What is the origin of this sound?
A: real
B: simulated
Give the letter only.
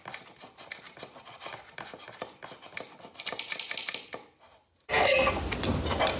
A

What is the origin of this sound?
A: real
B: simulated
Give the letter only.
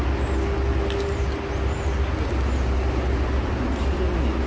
A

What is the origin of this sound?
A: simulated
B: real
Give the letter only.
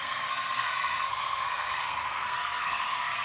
A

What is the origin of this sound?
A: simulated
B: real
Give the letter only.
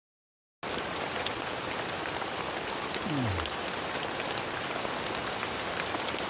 B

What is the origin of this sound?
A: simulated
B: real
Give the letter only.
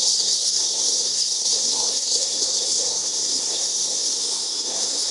A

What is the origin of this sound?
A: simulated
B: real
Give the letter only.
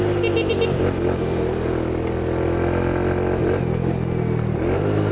B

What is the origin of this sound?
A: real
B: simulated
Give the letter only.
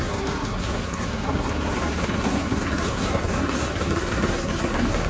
B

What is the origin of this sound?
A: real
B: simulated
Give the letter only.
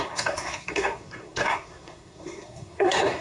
B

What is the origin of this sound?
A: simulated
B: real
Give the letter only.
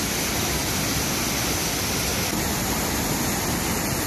B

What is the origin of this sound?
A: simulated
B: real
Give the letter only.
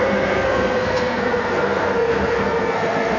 A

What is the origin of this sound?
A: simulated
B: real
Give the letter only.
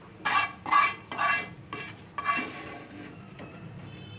B